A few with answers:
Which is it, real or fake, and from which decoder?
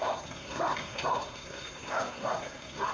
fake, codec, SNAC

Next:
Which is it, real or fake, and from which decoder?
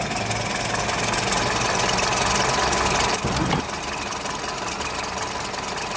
real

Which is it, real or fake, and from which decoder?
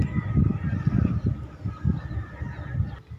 real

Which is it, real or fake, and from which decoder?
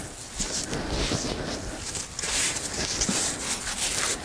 real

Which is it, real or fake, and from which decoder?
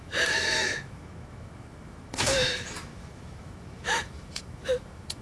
fake, autoencoder, DAC-VAE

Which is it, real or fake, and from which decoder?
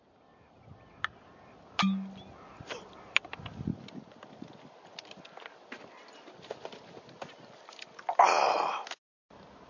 real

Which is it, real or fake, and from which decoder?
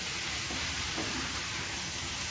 real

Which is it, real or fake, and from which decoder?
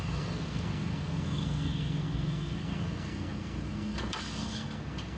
fake, codec, SNAC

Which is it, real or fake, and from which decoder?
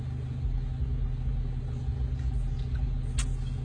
real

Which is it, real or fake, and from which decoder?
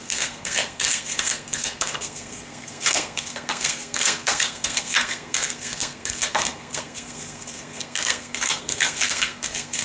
fake, codec, SNAC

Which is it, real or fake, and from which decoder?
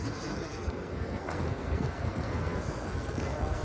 fake, codec, SNAC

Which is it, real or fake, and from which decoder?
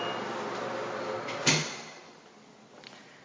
real